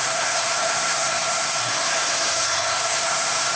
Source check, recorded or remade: remade